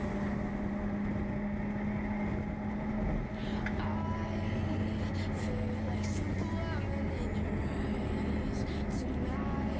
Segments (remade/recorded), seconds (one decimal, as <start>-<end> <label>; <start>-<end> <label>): 0.0-9.8 recorded